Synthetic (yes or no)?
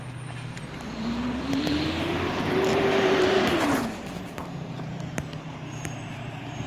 yes